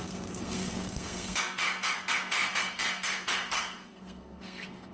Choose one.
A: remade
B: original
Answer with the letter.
A